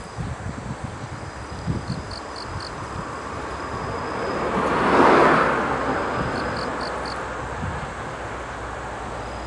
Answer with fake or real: real